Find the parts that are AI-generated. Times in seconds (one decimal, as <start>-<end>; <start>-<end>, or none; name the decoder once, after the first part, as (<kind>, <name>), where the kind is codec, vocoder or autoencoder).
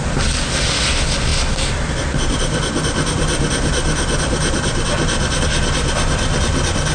none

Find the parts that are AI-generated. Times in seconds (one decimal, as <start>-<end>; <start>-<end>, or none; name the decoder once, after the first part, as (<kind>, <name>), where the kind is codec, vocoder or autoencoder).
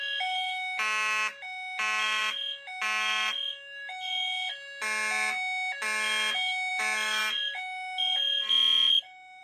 none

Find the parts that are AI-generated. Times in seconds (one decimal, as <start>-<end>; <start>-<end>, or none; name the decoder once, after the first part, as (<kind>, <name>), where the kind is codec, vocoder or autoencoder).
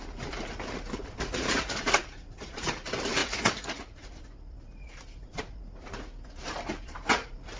1.0-2.7 (vocoder, Vocos); 3.2-4.1; 5.2-5.9